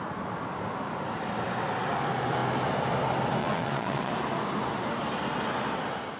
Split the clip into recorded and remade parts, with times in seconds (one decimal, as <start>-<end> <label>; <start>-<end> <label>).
0.0-3.4 recorded; 3.4-4.1 remade; 4.1-6.2 recorded